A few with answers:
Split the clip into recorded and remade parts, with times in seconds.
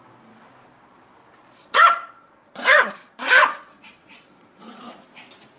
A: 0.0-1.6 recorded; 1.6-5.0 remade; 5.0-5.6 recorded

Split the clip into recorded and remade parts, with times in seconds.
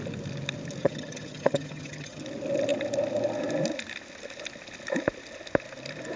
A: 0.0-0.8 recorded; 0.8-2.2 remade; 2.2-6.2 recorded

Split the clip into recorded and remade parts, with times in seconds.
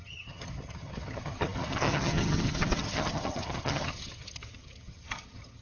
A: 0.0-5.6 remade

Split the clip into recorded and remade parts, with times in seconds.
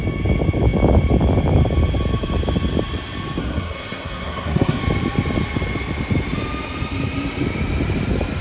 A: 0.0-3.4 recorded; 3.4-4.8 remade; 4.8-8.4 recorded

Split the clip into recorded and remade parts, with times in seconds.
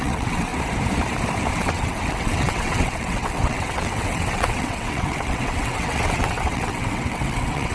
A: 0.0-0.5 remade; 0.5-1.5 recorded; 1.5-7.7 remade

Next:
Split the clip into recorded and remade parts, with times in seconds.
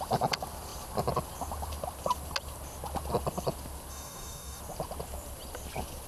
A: 0.0-3.9 recorded; 3.9-4.6 remade; 4.6-6.1 recorded